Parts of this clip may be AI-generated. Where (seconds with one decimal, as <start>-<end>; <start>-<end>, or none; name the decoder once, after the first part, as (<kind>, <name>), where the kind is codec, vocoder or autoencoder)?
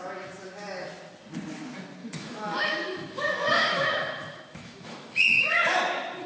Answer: 2.0-5.8 (autoencoder, DAC-VAE)